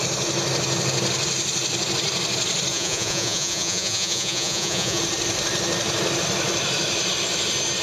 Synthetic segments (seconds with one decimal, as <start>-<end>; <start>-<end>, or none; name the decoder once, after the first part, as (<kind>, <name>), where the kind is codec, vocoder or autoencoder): 2.7-5.0 (vocoder, Vocos)